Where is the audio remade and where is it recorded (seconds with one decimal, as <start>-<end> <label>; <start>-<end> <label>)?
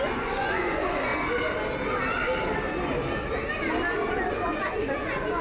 0.0-1.1 remade; 1.1-4.3 recorded; 4.3-5.4 remade